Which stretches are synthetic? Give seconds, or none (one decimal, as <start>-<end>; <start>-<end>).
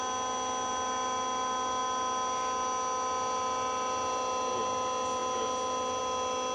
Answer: none